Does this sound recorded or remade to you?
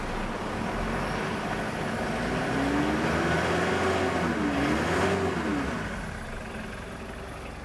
recorded